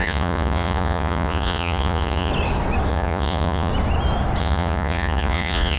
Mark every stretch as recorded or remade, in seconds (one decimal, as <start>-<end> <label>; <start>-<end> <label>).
0.0-2.3 remade; 2.3-2.9 recorded; 2.9-3.7 remade; 3.7-4.4 recorded; 4.4-5.8 remade